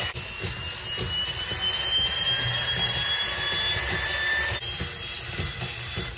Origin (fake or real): real